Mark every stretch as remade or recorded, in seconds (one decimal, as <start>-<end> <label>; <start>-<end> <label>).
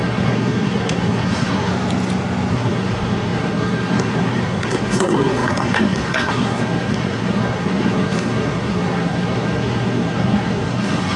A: 0.0-1.7 remade; 1.7-2.5 recorded; 2.5-11.2 remade